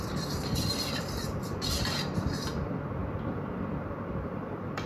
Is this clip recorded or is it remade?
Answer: remade